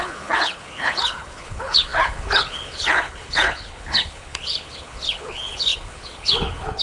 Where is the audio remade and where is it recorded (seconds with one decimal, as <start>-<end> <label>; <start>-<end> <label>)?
0.0-6.8 remade